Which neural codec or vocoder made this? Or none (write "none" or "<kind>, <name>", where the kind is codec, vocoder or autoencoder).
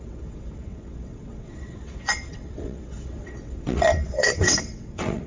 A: vocoder, WaveNeXt